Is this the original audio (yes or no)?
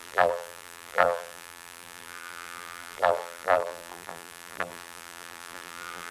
no